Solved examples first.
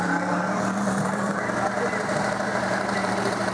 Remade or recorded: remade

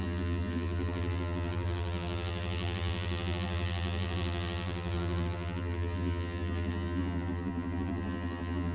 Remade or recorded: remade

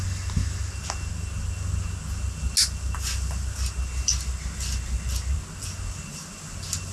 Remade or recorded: recorded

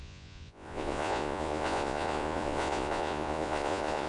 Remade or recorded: remade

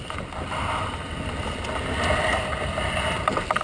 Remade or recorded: recorded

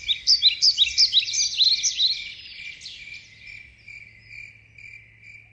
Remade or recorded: recorded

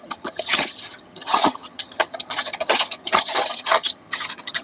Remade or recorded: remade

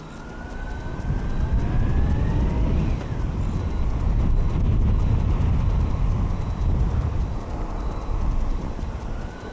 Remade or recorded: recorded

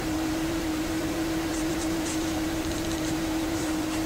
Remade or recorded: remade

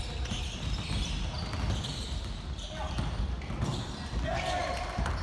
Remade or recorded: recorded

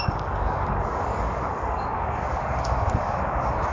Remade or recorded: remade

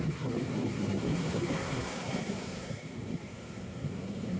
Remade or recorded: remade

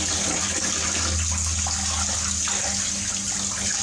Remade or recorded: recorded